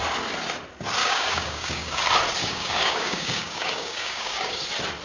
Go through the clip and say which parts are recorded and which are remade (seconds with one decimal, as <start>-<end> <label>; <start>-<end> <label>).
0.0-1.0 recorded; 1.0-2.0 remade; 2.0-2.4 recorded; 2.4-4.6 remade; 4.6-5.0 recorded